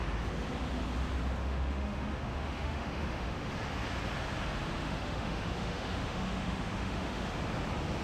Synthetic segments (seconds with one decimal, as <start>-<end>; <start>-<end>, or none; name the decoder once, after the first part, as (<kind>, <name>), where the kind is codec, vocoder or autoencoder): 1.4-3.5 (autoencoder, DAC-VAE); 4.8-7.3